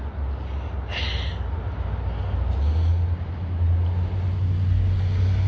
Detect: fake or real real